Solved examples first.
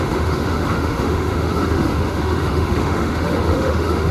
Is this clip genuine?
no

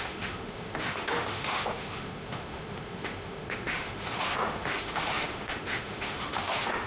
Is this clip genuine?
no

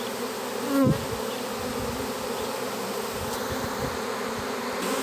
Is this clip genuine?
yes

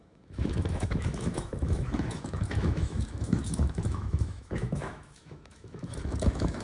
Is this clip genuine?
no